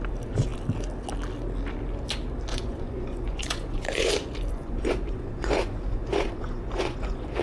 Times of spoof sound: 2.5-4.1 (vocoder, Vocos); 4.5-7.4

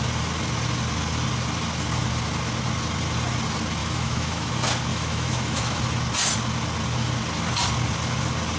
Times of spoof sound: 3.8-4.5 (autoencoder, DAC-VAE); 4.9-5.8

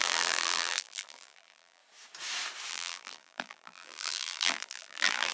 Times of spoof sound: 0.0-1.8 (vocoder, BigVGAN v2); 2.7-5.3